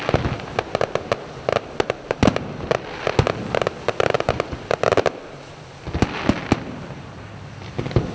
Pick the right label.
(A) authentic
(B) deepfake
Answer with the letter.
A